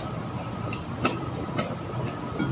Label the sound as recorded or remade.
recorded